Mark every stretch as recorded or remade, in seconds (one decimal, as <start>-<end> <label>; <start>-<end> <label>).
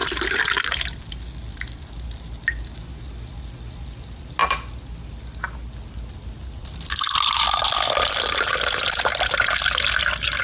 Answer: 0.0-1.1 remade; 1.1-6.6 recorded; 6.6-8.4 remade; 8.4-10.4 recorded